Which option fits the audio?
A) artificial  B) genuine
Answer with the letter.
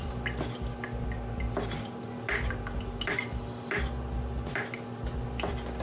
B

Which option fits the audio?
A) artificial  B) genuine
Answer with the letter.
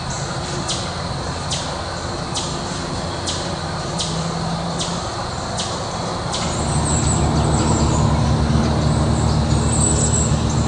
B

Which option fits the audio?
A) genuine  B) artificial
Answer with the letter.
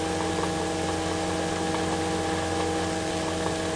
A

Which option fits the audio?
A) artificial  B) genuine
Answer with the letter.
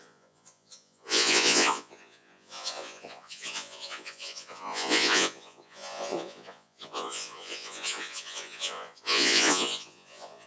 A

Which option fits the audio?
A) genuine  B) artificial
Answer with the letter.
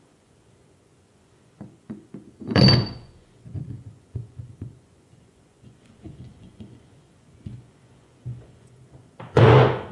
B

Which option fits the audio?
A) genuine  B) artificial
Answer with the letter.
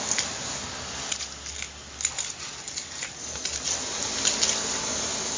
A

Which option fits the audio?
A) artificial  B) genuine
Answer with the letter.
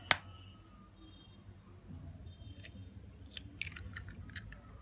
B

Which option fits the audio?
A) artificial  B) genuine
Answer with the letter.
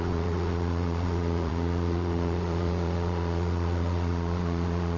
A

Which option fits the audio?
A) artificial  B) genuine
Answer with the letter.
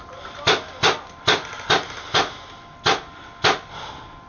B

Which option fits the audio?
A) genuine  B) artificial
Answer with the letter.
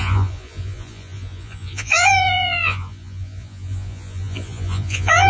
B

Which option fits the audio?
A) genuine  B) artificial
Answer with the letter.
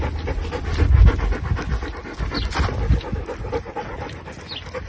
A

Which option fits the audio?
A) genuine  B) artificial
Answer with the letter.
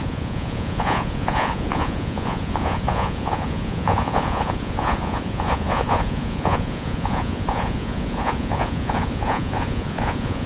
B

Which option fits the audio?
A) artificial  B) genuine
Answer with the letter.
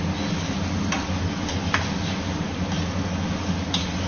B